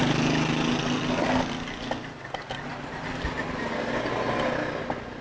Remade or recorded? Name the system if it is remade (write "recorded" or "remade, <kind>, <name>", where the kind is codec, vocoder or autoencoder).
recorded